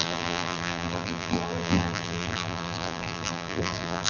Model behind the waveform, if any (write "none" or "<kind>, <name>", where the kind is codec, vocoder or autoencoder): vocoder, BigVGAN v2